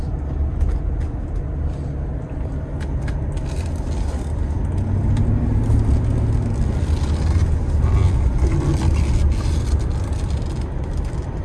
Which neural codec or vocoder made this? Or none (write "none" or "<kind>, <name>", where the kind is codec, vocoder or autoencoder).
none